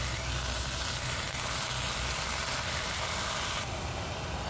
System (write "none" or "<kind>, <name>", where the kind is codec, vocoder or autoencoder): none